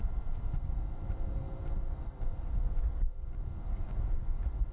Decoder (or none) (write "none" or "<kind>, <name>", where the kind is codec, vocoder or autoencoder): none